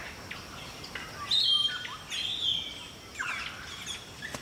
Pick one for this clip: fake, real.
real